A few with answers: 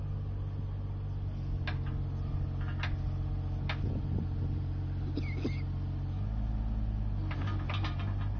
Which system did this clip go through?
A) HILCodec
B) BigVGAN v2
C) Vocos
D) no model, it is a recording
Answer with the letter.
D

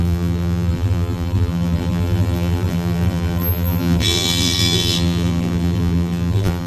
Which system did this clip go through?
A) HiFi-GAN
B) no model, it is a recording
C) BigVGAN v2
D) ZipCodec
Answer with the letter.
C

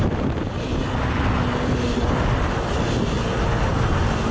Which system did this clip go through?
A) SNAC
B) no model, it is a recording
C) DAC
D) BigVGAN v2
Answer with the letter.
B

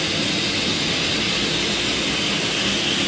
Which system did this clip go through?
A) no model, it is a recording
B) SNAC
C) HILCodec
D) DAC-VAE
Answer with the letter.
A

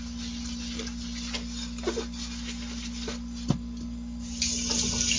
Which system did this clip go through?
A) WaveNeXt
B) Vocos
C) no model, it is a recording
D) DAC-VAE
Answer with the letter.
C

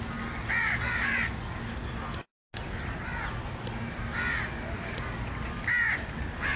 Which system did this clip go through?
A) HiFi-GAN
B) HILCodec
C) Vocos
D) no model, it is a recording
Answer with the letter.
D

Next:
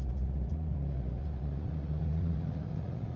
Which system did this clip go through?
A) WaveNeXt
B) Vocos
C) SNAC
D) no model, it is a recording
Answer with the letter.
B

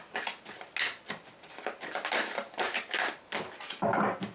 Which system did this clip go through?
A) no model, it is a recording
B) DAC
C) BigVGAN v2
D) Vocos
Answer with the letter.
A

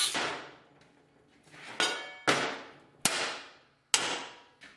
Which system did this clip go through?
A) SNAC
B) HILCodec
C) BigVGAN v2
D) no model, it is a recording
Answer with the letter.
D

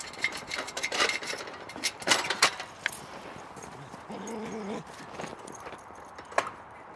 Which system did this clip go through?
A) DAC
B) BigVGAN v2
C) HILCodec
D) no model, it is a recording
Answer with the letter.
B